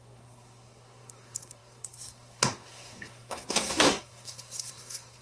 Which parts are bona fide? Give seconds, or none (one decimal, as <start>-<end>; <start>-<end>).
none

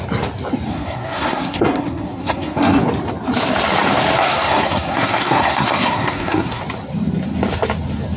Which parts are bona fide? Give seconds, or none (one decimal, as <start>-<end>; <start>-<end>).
0.0-0.7; 2.8-4.2; 6.6-8.2

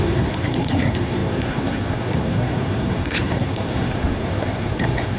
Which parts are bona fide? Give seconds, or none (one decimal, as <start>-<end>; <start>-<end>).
none

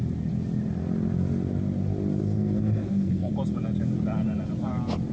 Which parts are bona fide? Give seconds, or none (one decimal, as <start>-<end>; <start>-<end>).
0.0-2.2; 3.3-5.1

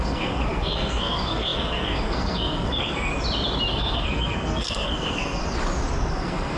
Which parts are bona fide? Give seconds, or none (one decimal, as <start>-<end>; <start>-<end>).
3.1-3.7; 5.4-6.1